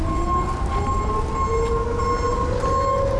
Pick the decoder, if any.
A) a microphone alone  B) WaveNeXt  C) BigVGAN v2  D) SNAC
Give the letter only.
A